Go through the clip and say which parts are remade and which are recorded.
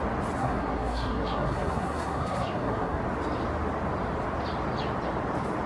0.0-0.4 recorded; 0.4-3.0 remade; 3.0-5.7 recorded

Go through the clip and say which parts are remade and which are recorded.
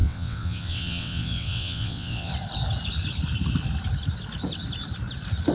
0.0-2.3 remade; 2.3-5.5 recorded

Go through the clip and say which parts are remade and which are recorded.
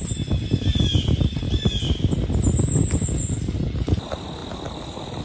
0.0-5.2 recorded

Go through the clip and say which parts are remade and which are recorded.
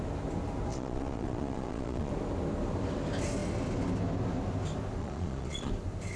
0.0-0.7 recorded; 0.7-2.1 remade; 2.1-5.0 recorded; 5.0-5.7 remade; 5.7-6.2 recorded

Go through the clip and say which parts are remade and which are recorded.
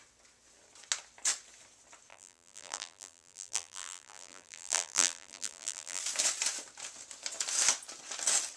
0.0-2.1 recorded; 2.1-6.0 remade; 6.0-8.6 recorded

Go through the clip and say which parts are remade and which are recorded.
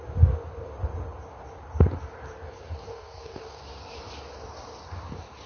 0.0-2.9 recorded; 2.9-3.6 remade; 3.6-5.5 recorded